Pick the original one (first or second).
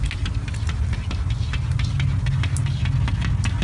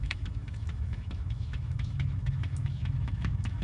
first